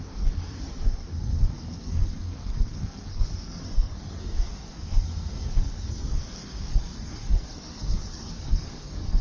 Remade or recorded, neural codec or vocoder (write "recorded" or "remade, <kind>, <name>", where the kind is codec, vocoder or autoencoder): remade, codec, SNAC